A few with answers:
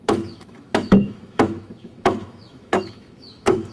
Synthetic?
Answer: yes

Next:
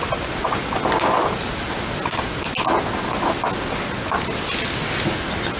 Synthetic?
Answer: no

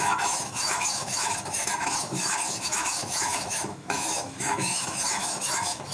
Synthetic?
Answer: yes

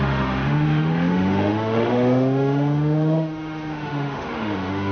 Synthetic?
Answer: yes